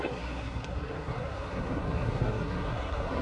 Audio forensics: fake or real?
fake